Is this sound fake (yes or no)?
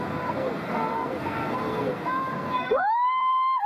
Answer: yes